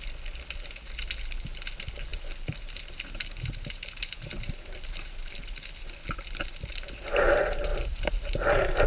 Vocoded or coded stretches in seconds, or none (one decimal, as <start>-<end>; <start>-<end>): 2.1-5.9; 7.7-8.9